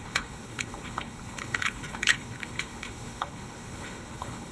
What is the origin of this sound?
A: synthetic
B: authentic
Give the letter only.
A